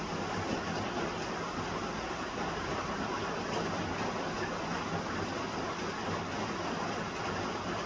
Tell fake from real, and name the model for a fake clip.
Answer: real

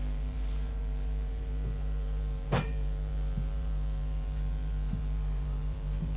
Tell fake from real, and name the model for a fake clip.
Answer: fake, vocoder, BigVGAN v2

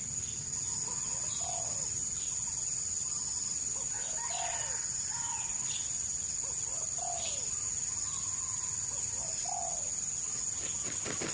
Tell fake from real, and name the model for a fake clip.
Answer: real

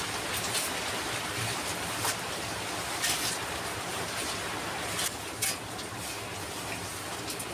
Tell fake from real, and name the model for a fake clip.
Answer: real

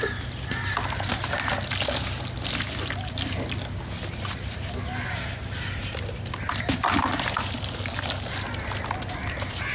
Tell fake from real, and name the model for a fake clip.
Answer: real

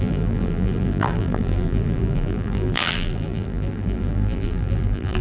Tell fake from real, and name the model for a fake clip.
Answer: fake, vocoder, BigVGAN v2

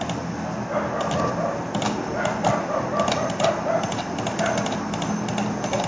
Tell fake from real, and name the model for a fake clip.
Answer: real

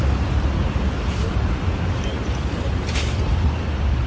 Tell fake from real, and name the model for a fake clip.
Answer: fake, vocoder, BigVGAN v2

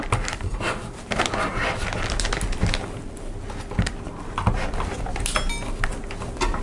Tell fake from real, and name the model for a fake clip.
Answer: real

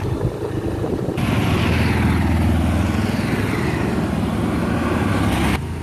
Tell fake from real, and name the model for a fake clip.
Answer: real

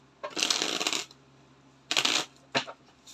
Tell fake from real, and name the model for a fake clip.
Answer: real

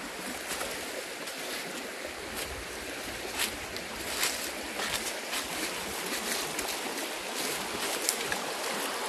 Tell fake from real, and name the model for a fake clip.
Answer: real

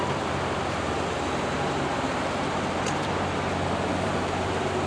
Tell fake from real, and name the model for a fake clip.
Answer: fake, vocoder, BigVGAN v2